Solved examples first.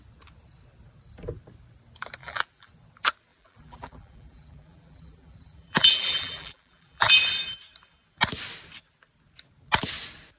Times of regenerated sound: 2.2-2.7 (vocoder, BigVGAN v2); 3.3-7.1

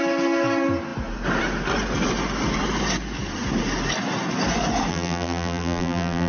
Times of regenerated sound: 4.9-6.3 (vocoder, BigVGAN v2)

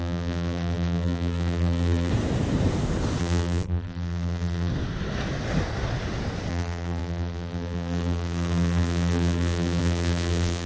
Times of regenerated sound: 0.0-2.1 (vocoder, BigVGAN v2); 3.2-4.7; 6.5-10.7

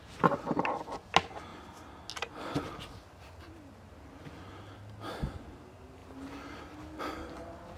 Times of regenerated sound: none

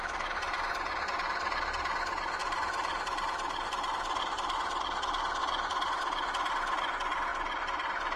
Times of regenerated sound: 2.4-4.8 (vocoder, BigVGAN v2)

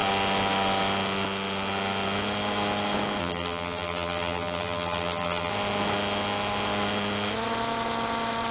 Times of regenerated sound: 3.2-5.5 (vocoder, BigVGAN v2)

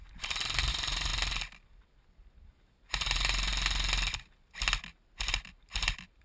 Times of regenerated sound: 0.7-1.1 (vocoder, BigVGAN v2); 2.5-3.5

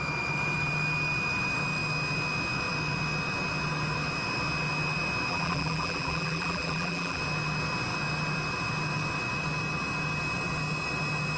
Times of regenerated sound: 5.3-7.2 (vocoder, BigVGAN v2)